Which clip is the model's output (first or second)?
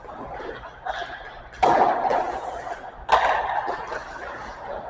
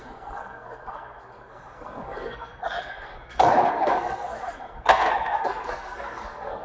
second